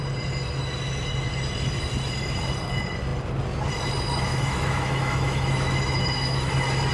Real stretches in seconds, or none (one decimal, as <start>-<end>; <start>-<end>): 0.0-4.3; 6.5-6.9